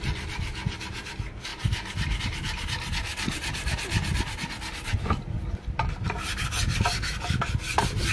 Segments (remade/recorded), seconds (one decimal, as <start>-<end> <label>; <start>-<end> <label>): 0.0-8.1 recorded